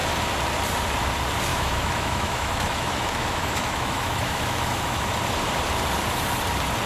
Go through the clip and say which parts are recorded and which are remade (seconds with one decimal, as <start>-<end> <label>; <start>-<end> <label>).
0.0-1.5 recorded; 1.5-5.1 remade; 5.1-6.9 recorded